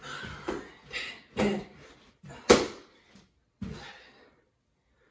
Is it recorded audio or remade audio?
recorded